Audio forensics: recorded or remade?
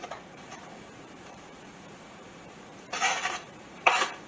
remade